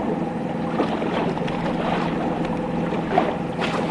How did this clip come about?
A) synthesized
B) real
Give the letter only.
B